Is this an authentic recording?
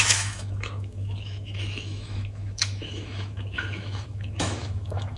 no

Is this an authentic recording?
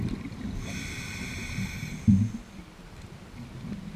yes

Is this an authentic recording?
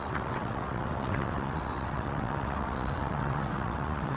no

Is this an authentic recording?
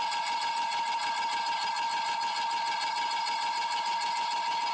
yes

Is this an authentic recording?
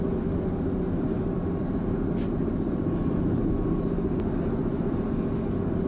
yes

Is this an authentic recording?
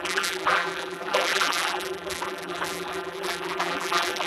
no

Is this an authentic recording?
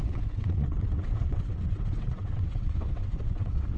no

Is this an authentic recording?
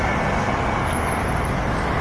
yes